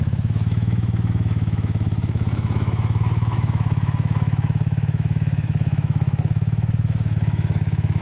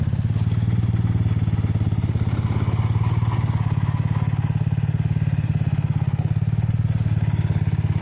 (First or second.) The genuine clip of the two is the second